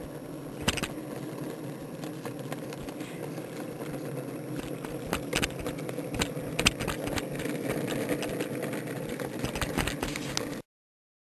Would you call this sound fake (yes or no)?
no